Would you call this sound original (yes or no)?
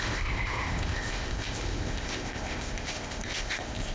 no